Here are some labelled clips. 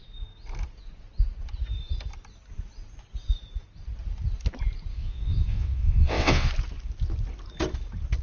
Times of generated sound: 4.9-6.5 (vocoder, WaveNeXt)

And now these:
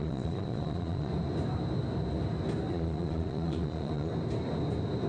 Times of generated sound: 0.0-1.1 (vocoder, Vocos); 2.7-4.1

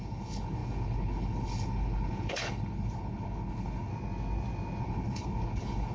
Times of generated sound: 0.0-3.9 (codec, HILCodec); 4.8-5.9

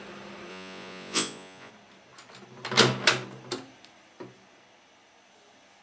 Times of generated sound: 0.5-1.7 (vocoder, Vocos)